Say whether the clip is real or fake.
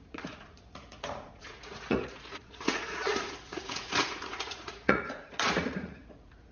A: fake